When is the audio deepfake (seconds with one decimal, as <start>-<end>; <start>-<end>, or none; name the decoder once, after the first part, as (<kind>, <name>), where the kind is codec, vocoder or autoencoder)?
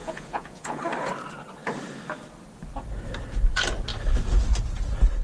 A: 0.0-0.8 (vocoder, Vocos)